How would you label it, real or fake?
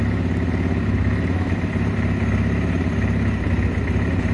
real